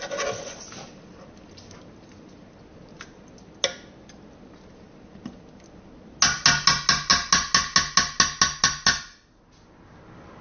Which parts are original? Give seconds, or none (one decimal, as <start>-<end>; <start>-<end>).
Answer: 0.0-10.4